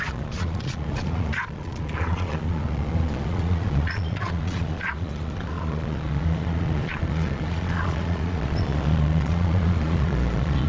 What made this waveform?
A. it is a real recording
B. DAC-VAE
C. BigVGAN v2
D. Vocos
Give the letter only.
D